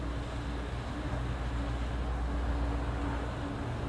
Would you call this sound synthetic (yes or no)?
no